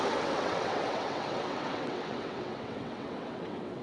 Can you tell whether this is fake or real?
fake